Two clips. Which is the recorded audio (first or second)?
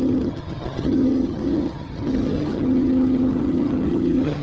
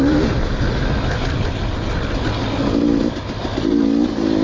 second